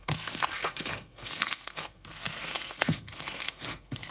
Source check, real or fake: fake